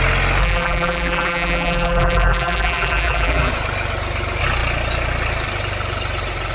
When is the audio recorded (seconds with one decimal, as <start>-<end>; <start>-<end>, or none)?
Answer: 0.0-0.4; 3.5-6.5